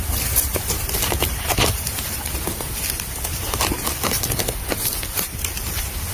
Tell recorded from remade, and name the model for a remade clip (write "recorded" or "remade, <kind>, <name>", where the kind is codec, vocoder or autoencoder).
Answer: remade, vocoder, BigVGAN v2